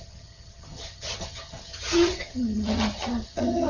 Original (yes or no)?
no